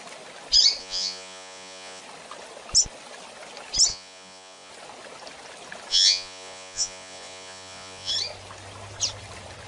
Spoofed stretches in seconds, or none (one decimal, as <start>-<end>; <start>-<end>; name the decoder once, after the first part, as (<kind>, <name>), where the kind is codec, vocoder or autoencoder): 0.8-2.0 (vocoder, Vocos); 3.9-4.7; 5.9-8.1